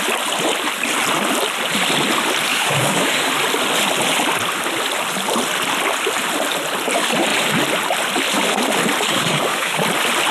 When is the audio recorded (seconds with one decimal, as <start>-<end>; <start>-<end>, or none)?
0.0-2.5; 3.3-9.1; 9.8-10.3